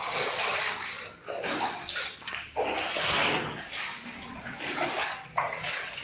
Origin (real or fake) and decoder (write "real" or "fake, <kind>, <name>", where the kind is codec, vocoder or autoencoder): real